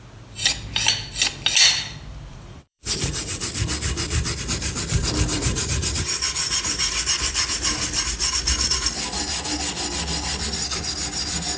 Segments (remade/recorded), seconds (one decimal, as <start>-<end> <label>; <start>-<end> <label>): 0.0-2.3 recorded; 2.3-3.4 remade; 3.4-5.3 recorded; 5.3-6.9 remade; 6.9-11.6 recorded